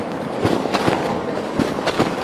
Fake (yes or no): yes